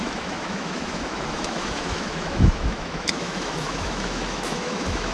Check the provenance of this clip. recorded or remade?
remade